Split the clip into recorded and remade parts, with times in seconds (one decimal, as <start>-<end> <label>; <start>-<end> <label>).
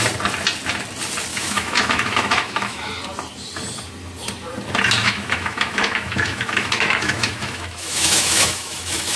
0.0-1.3 recorded; 1.3-2.9 remade; 2.9-5.0 recorded; 5.0-9.2 remade